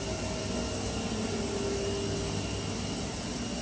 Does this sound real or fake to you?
real